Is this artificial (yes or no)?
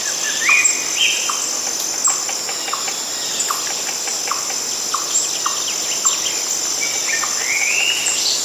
no